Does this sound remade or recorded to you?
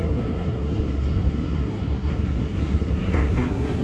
remade